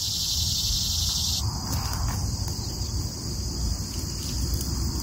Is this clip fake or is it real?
real